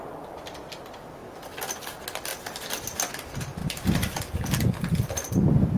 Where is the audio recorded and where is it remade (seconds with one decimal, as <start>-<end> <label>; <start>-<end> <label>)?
0.0-1.2 recorded; 1.2-1.8 remade; 1.8-3.6 recorded; 3.6-5.3 remade; 5.3-5.8 recorded